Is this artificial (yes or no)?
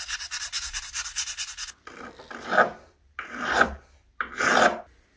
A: no